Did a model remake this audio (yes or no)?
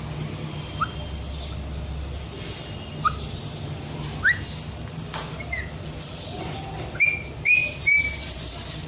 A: no